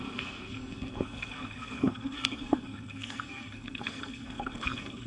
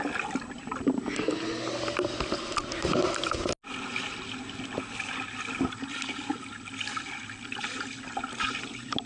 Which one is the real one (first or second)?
second